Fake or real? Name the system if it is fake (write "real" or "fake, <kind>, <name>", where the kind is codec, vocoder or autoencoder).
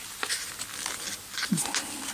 real